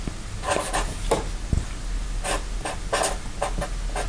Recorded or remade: recorded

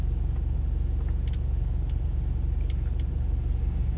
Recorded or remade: recorded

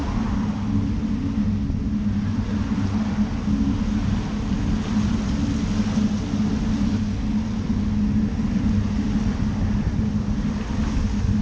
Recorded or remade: recorded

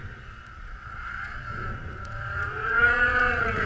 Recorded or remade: remade